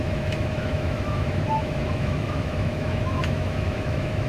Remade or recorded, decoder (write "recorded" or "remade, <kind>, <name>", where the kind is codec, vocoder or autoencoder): remade, autoencoder, DAC-VAE